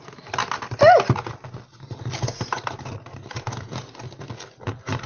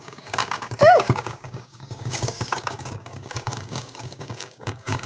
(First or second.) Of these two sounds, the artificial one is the second